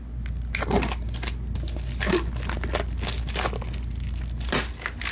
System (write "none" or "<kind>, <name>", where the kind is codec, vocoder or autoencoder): none